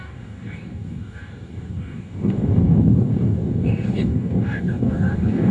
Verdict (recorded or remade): remade